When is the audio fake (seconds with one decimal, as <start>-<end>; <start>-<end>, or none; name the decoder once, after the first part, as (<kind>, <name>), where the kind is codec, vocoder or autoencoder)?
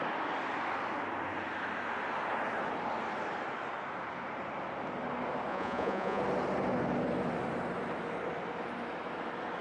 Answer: 5.5-6.2 (vocoder, Vocos)